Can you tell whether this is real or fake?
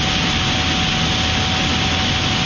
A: real